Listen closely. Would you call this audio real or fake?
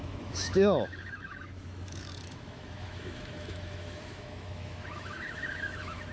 fake